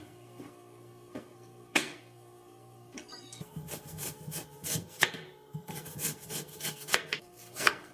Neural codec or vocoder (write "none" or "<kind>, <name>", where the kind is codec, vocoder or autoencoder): codec, SNAC